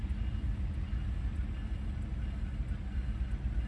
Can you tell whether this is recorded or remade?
recorded